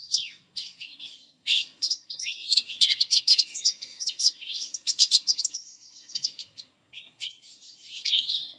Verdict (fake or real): fake